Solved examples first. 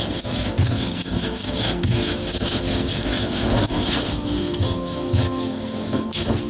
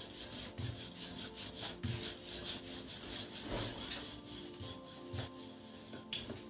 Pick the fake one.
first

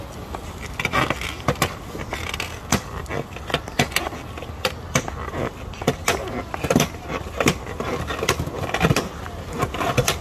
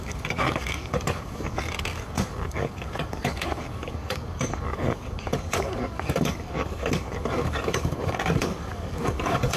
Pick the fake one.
second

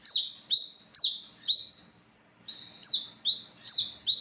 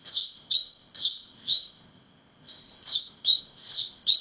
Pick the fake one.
second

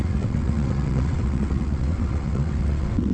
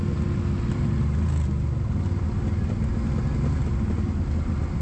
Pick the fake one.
first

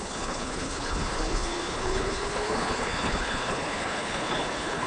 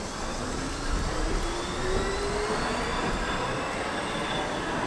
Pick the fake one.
first